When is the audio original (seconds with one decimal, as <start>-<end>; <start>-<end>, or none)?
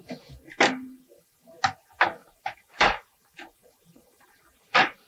0.0-2.2